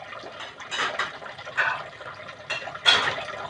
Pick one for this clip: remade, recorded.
recorded